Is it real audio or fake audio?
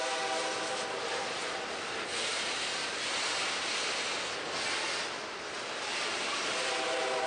real